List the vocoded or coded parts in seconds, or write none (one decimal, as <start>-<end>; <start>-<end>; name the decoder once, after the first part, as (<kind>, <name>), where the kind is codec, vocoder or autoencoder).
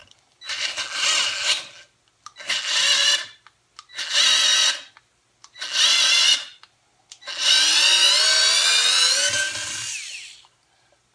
0.0-0.6 (vocoder, BigVGAN v2)